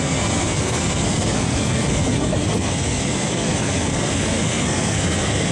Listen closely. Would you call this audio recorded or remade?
remade